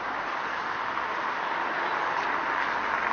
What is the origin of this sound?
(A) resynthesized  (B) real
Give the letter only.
B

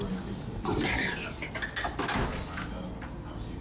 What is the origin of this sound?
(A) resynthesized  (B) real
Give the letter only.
B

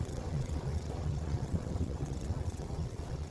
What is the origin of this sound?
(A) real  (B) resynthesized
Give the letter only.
B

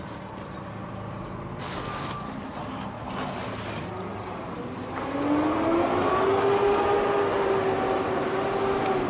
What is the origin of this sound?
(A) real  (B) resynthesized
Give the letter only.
A